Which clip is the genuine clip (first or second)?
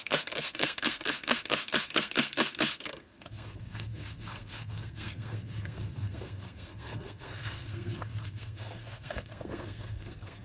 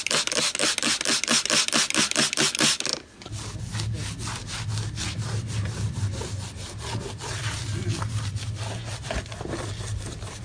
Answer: second